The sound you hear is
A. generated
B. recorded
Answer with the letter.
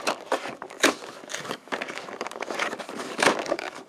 A